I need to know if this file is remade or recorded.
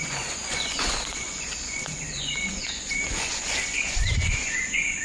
remade